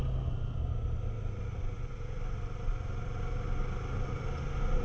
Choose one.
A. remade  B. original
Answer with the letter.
B